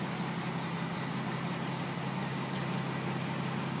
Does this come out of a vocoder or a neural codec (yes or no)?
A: no